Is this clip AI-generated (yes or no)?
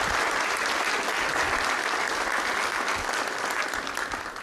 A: no